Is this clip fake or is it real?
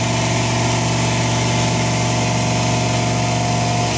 real